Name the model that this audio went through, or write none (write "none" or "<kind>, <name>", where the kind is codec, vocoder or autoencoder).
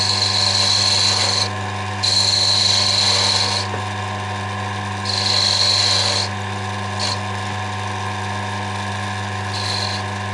none